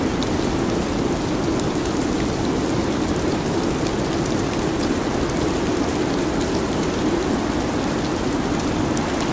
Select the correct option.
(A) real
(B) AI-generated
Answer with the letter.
A